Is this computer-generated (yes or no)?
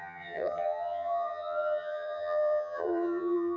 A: yes